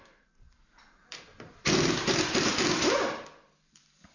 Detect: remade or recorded remade